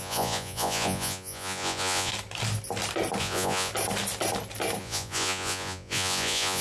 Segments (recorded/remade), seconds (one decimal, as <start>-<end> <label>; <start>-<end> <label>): 0.0-2.1 remade; 2.1-3.2 recorded; 3.2-3.7 remade; 3.7-4.8 recorded; 4.8-6.6 remade